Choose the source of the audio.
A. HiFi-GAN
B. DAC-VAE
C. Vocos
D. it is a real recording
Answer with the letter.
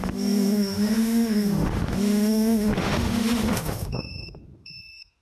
B